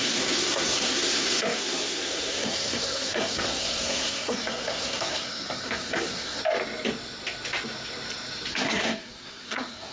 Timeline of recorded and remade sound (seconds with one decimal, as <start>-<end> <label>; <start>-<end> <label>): 0.0-6.4 remade; 6.4-8.5 recorded; 8.5-9.9 remade